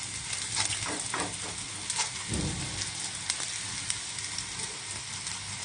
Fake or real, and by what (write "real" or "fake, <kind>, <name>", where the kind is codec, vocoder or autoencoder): real